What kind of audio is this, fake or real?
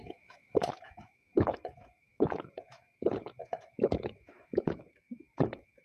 fake